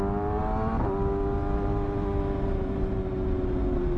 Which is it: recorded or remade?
recorded